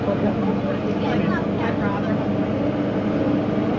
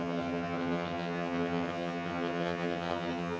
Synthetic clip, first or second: second